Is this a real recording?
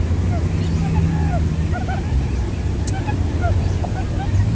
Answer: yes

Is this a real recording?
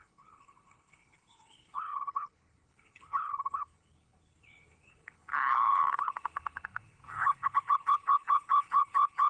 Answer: no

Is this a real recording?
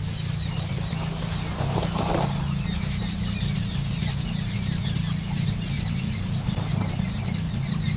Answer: yes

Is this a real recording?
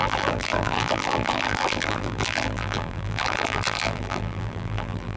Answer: no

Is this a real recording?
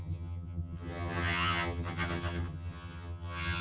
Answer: no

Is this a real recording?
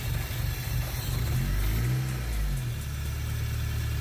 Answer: yes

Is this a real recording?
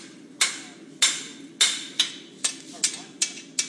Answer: yes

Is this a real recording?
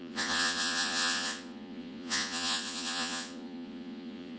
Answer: no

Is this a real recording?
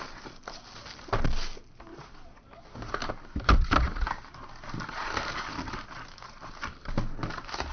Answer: yes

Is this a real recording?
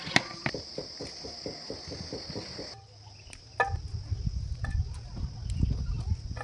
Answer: yes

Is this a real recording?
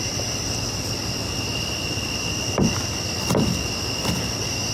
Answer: yes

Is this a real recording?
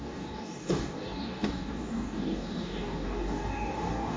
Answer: no